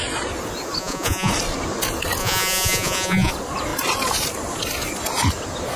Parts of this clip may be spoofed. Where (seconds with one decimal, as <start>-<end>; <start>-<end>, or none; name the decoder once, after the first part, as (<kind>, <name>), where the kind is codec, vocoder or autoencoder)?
0.8-1.3 (vocoder, Vocos); 2.2-3.3